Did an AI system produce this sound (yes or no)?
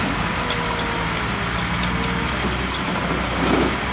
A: no